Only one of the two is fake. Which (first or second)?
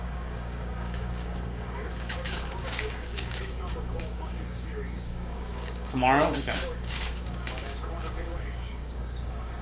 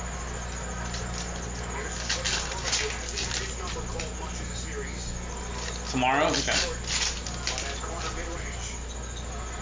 first